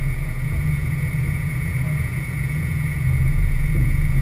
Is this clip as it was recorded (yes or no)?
no